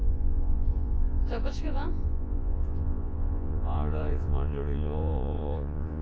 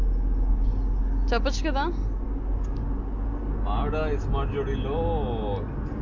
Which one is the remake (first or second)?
first